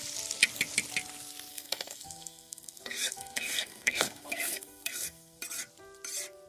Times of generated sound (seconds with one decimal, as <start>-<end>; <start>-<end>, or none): 1.5-5.4